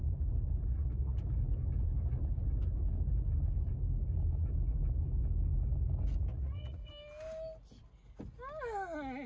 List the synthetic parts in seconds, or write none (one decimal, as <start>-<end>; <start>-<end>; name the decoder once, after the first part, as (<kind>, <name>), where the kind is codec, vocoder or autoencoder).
0.7-1.3 (vocoder, Vocos); 6.3-6.9